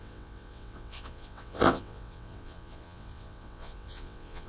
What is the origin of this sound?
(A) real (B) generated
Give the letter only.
B